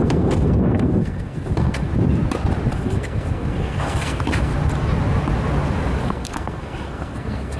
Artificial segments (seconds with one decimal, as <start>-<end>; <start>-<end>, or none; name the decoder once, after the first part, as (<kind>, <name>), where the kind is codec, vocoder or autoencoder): 0.0-1.9 (codec, SNAC); 2.7-4.5; 6.0-7.6